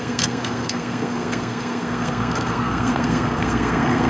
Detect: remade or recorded remade